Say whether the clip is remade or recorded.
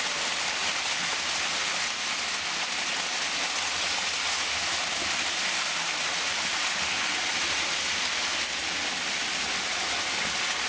recorded